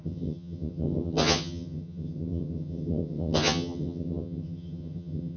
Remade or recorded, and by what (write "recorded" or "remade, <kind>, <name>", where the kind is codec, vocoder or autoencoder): remade, vocoder, HiFi-GAN